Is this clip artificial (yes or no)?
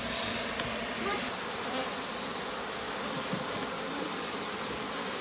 no